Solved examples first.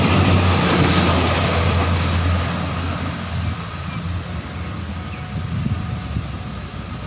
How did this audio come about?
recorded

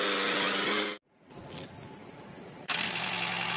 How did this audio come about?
recorded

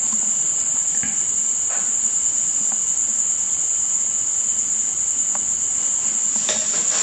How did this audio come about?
recorded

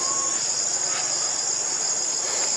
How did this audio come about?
recorded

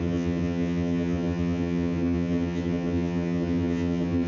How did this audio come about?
remade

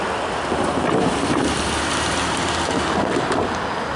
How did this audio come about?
recorded